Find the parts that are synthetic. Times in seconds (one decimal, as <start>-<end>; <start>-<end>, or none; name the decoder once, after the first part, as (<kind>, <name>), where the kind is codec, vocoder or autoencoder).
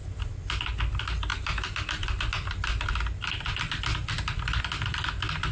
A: none